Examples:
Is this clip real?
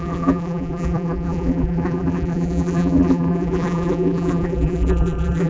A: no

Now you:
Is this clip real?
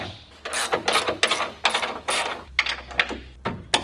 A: yes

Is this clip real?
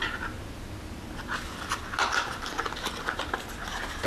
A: yes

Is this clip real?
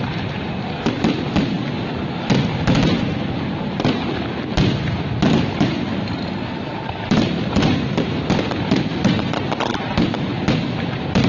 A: yes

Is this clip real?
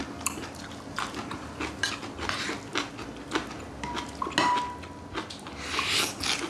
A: yes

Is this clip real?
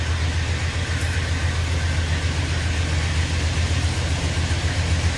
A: yes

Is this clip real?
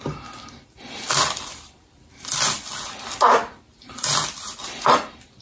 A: yes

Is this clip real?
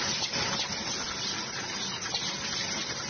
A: yes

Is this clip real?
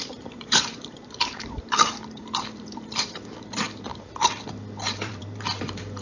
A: no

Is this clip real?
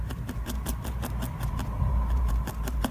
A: no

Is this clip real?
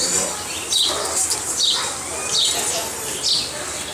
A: yes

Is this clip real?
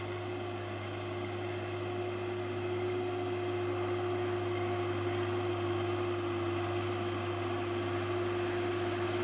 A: yes